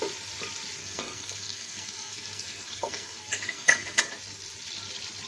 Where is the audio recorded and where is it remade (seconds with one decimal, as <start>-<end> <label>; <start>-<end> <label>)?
0.0-0.8 recorded; 0.8-4.0 remade; 4.0-5.3 recorded

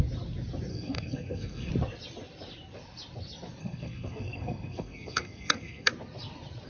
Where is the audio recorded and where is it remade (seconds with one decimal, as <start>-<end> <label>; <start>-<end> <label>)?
0.0-0.7 recorded; 0.7-1.7 remade; 1.7-3.6 recorded; 3.6-5.9 remade; 5.9-6.7 recorded